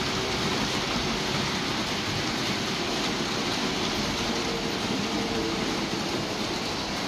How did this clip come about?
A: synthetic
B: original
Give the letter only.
B